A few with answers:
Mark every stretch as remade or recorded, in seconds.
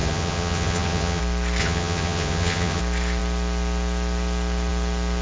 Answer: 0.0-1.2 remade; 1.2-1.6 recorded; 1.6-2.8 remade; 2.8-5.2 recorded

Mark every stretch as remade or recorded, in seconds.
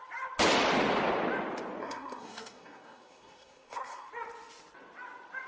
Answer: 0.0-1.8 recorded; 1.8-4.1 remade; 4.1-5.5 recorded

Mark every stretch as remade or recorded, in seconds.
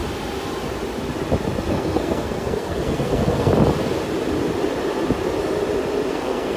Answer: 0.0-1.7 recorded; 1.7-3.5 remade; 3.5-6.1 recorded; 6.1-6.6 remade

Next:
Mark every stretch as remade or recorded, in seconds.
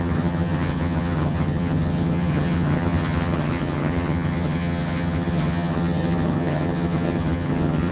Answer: 0.0-7.9 remade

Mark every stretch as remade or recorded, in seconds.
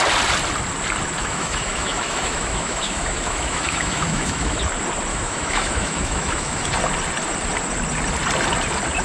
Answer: 0.0-1.2 recorded; 1.2-4.6 remade; 4.6-5.1 recorded; 5.1-6.7 remade; 6.7-9.0 recorded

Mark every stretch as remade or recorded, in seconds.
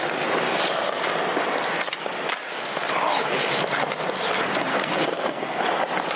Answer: 0.0-4.7 recorded; 4.7-5.6 remade; 5.6-6.2 recorded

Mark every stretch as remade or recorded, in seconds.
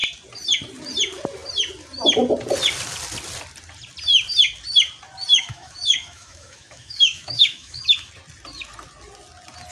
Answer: 0.0-5.3 recorded; 5.3-8.1 remade; 8.1-9.7 recorded